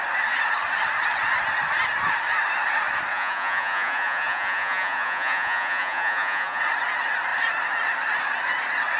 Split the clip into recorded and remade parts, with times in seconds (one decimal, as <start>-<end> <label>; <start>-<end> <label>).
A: 0.0-3.1 recorded; 3.1-6.6 remade; 6.6-9.0 recorded